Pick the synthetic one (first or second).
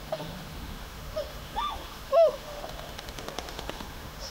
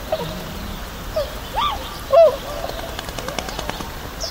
first